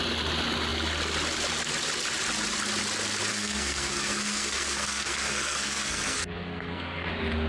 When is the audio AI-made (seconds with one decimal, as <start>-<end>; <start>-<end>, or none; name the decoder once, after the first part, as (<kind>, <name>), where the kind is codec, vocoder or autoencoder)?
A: 3.3-7.1 (codec, SNAC)